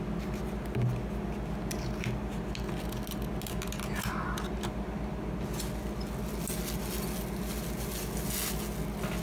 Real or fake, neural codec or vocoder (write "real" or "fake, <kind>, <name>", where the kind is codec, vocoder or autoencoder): real